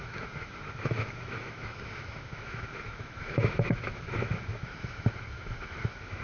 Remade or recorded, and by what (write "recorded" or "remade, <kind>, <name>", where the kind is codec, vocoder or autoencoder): remade, autoencoder, DAC-VAE